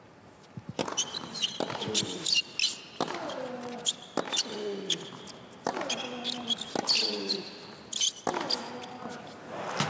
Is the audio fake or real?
real